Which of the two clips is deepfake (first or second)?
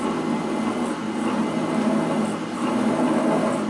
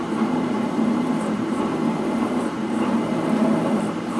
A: second